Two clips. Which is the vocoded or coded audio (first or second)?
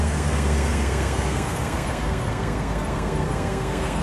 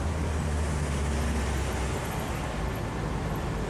first